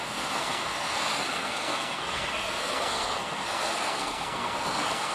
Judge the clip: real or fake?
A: fake